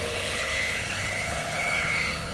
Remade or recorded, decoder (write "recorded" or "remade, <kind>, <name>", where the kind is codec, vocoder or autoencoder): remade, codec, HILCodec